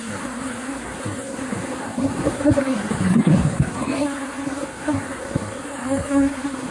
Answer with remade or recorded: remade